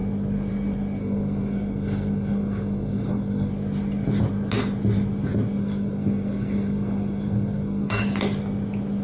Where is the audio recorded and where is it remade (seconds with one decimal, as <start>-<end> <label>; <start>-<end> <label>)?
0.0-1.0 recorded; 1.0-3.5 remade; 3.5-5.6 recorded; 5.6-8.0 remade; 8.0-9.0 recorded